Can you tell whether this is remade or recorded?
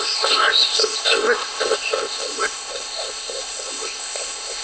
remade